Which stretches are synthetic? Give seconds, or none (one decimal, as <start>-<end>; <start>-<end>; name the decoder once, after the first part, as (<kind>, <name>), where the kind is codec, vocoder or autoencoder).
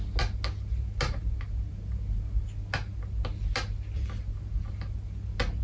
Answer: none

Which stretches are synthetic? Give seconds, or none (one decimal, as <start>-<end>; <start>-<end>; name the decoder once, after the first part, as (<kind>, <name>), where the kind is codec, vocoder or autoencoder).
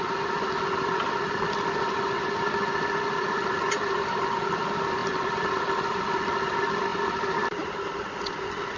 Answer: none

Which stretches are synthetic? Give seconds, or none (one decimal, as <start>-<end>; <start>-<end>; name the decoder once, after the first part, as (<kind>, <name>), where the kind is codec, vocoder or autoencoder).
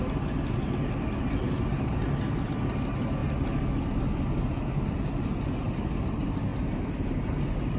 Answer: none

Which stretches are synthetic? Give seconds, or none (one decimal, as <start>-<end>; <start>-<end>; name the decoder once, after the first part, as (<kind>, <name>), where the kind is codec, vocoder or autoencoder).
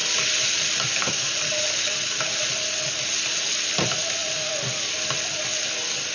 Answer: none